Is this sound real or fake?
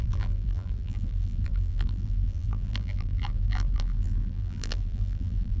fake